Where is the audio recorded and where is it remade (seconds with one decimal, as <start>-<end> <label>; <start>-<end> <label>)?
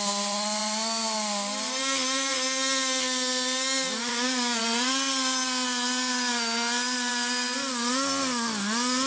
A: 0.0-4.1 recorded; 4.1-4.6 remade; 4.6-9.1 recorded